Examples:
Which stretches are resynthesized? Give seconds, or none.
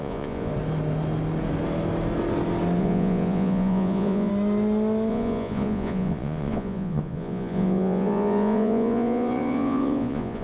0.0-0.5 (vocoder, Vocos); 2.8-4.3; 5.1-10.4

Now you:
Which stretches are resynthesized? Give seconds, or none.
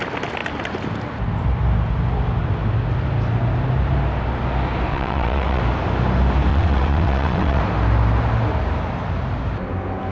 4.9-5.6 (vocoder, WaveNeXt); 6.5-7.6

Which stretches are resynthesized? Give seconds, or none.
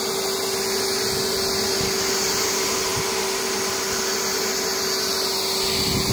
none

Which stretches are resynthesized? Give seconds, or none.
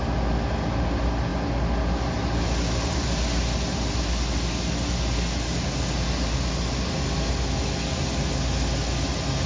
none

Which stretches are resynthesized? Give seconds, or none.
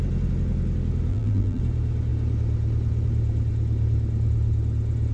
1.1-1.6 (vocoder, BigVGAN v2)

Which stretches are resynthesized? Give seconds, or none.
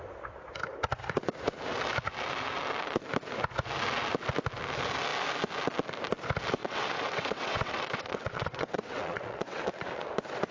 6.6-10.1 (vocoder, WaveNeXt)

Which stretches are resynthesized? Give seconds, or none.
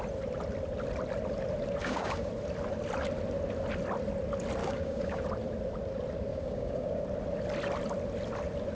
1.8-2.3 (codec, DAC); 4.6-5.2; 6.3-7.0